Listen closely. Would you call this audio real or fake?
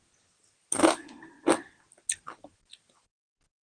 real